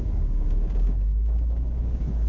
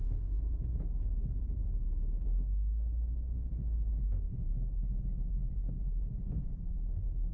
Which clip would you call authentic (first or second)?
second